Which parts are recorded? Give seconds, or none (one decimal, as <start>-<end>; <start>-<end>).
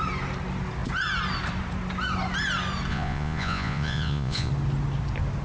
0.0-2.9; 4.5-5.4